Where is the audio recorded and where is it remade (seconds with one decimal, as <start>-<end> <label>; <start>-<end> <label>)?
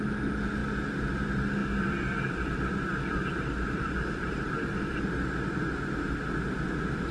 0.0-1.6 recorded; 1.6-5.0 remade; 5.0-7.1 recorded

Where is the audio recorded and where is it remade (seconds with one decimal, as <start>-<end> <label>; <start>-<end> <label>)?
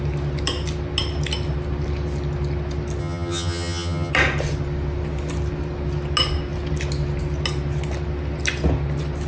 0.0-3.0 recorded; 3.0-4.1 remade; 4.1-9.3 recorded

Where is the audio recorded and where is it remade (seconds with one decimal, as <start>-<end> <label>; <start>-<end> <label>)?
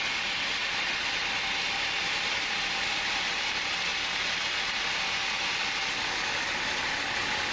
0.0-0.6 recorded; 0.6-1.2 remade; 1.2-7.5 recorded